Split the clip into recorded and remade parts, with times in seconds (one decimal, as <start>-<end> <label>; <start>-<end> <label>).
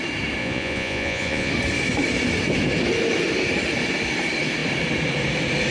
0.0-0.4 recorded; 0.4-1.5 remade; 1.5-5.7 recorded